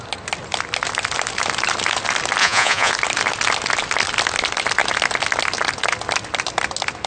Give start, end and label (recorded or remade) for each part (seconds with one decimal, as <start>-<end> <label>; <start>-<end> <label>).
0.0-2.4 recorded; 2.4-2.9 remade; 2.9-7.1 recorded